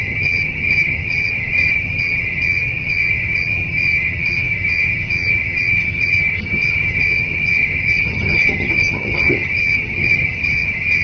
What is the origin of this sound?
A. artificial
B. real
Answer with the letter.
A